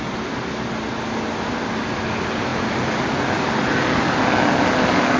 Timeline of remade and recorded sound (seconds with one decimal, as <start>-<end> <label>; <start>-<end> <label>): 0.0-5.2 recorded